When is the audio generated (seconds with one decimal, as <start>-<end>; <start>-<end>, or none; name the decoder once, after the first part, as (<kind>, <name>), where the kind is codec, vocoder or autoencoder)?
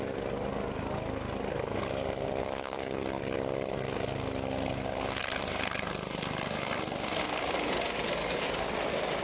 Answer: 2.4-3.2 (codec, DAC); 8.2-8.7